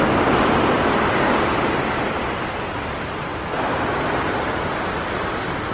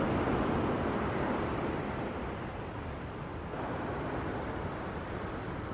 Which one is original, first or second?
first